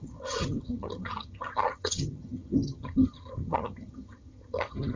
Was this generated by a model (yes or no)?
yes